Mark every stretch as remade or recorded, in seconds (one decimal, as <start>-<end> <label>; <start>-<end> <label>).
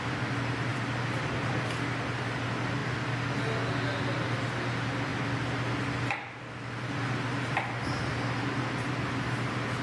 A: 0.0-9.8 recorded